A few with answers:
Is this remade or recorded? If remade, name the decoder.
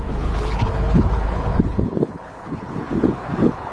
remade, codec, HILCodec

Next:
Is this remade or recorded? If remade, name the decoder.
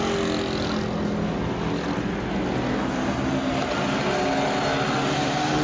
recorded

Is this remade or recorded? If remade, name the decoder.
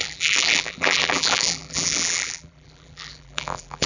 remade, vocoder, BigVGAN v2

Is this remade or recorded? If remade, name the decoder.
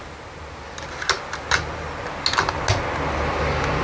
recorded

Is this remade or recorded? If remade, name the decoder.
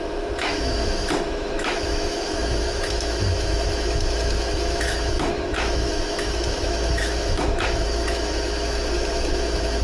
remade, autoencoder, DAC-VAE